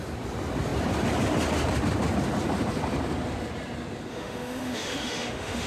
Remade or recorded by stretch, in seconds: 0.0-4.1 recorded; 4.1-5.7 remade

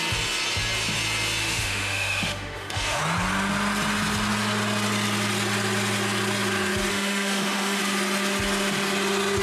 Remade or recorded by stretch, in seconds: 0.0-1.4 recorded; 1.4-3.0 remade; 3.0-6.9 recorded; 6.9-7.8 remade; 7.8-9.4 recorded

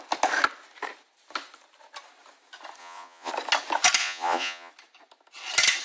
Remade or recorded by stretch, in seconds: 0.0-2.8 recorded; 2.8-3.3 remade; 3.3-4.0 recorded; 4.0-4.7 remade; 4.7-5.8 recorded

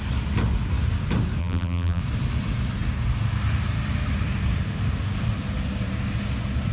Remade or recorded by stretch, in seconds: 0.0-1.4 recorded; 1.4-2.0 remade; 2.0-6.7 recorded

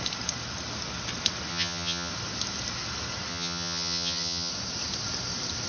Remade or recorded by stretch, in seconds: 0.0-1.5 recorded; 1.5-2.1 remade; 2.1-3.3 recorded; 3.3-4.5 remade; 4.5-5.7 recorded